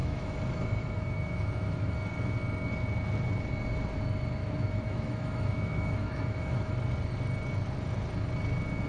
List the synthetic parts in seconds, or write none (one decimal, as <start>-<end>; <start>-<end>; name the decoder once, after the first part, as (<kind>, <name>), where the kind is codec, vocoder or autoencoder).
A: 0.0-1.9 (autoencoder, DAC-VAE); 4.4-6.7